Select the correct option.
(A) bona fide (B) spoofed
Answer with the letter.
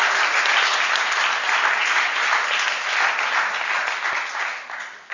A